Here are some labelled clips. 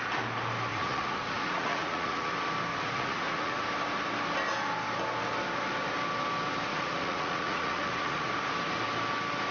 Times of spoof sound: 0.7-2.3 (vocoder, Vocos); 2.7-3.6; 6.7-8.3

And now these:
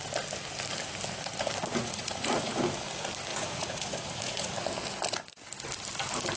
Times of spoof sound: 1.7-2.6 (vocoder, Vocos); 3.3-4.5

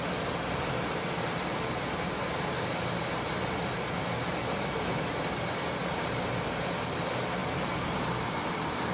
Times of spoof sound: none

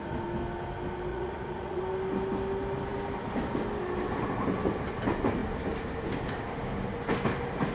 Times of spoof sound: 1.1-1.8 (vocoder, Vocos)

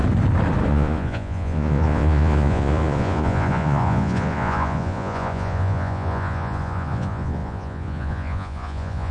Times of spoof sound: 0.7-9.1 (vocoder, Vocos)

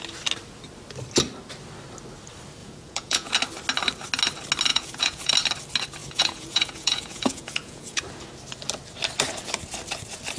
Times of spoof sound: 2.6-3.3 (vocoder, Vocos); 4.7-5.3; 6.0-8.0

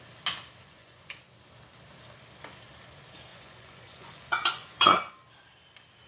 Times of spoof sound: 0.6-1.2 (vocoder, Vocos); 3.3-5.1

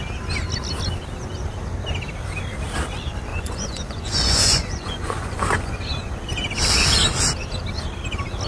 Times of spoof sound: 3.3-6.1 (vocoder, Vocos)